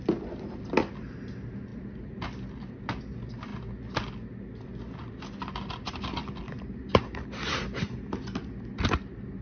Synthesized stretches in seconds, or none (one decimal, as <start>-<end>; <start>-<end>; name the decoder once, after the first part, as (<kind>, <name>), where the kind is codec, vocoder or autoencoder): none